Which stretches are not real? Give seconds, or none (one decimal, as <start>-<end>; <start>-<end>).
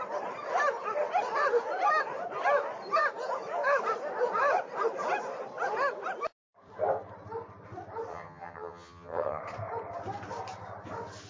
8.1-9.4